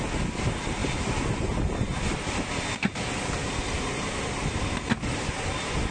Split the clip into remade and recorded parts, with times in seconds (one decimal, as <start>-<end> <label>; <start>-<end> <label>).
0.0-5.9 recorded